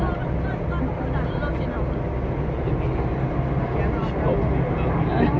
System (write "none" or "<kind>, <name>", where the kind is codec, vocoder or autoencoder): none